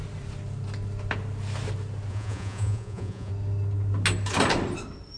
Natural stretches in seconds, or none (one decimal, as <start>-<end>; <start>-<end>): 0.0-2.1; 3.3-5.2